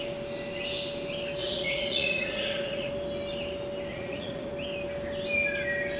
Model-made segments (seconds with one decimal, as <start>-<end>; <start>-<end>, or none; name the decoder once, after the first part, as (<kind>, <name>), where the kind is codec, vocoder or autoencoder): 1.4-2.9 (vocoder, Vocos); 3.9-4.5